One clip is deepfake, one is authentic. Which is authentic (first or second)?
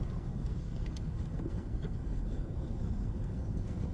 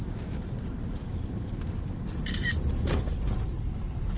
second